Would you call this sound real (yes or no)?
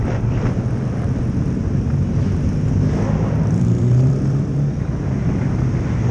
no